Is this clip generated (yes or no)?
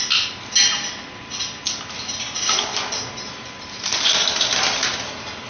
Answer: no